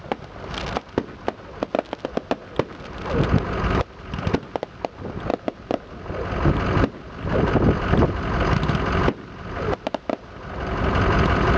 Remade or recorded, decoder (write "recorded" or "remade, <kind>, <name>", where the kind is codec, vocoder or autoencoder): recorded